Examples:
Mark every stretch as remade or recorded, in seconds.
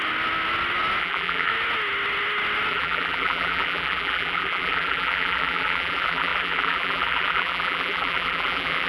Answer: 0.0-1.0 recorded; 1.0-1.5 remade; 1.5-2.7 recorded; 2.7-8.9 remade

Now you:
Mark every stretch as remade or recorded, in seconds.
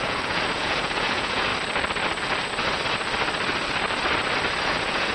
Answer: 0.0-1.5 remade; 1.5-4.6 recorded; 4.6-5.1 remade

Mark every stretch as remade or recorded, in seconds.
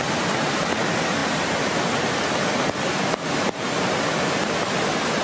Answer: 0.0-5.2 remade